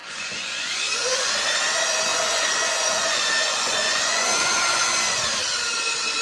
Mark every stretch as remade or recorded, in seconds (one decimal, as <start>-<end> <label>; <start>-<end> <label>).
0.0-1.3 remade; 1.3-2.1 recorded; 2.1-5.2 remade; 5.2-6.2 recorded